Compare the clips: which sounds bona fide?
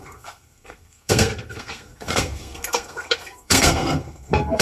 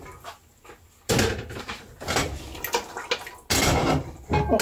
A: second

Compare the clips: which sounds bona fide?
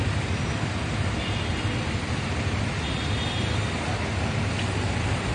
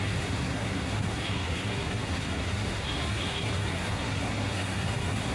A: first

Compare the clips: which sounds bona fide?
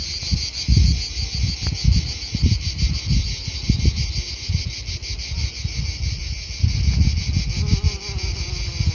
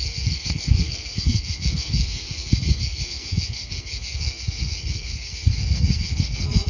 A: first